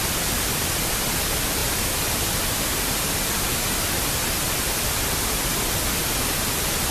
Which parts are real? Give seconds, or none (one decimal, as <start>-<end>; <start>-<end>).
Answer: 0.0-6.9